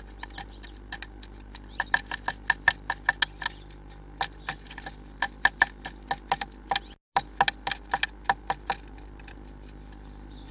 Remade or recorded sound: recorded